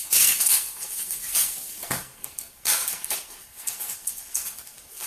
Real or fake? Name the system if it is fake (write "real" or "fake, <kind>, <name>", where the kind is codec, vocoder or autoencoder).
fake, codec, SNAC